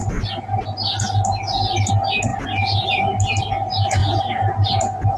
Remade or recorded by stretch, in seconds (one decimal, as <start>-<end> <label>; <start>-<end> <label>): 0.0-5.2 recorded